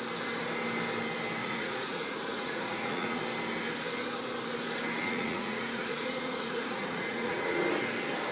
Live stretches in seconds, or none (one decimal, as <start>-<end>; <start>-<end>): 0.0-1.4; 3.2-5.0; 7.6-8.3

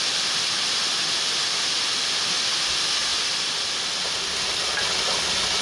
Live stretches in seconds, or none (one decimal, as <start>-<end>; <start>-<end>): 0.0-5.6